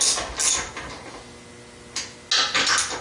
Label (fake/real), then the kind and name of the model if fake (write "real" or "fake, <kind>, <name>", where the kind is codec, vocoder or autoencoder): real